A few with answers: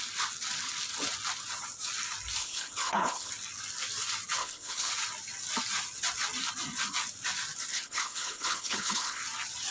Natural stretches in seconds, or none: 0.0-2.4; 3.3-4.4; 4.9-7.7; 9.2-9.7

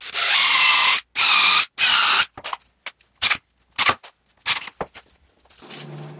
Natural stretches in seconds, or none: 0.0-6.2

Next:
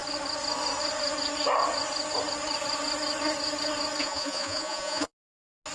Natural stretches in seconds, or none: 0.0-4.0; 5.1-5.7

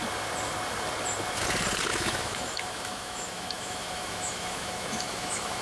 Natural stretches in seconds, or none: 0.0-1.9